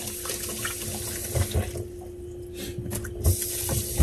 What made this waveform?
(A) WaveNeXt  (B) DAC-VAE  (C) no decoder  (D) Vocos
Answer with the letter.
C